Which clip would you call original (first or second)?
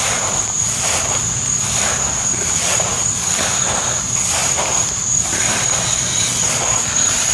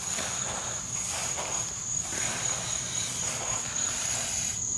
second